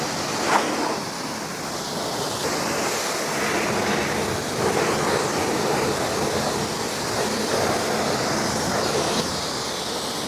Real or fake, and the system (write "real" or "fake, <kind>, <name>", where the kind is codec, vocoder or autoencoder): real